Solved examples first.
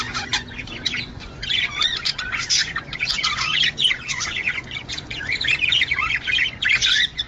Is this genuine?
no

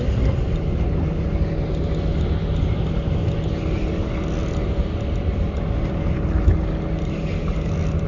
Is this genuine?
yes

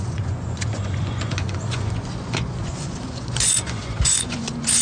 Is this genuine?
no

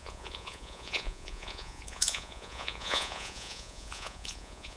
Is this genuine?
no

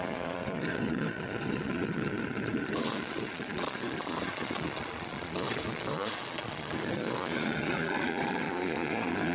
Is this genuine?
no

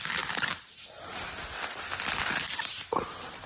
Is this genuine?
yes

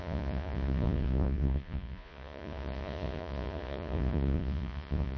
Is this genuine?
no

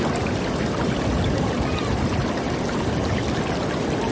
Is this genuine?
yes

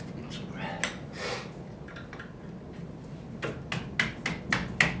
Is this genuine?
yes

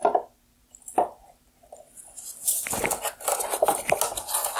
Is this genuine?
yes